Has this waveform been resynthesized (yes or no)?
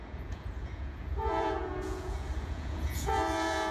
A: yes